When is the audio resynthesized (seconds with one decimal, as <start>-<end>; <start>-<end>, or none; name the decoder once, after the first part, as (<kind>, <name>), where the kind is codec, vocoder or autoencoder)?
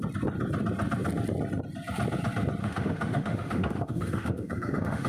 2.6-5.1 (autoencoder, DAC-VAE)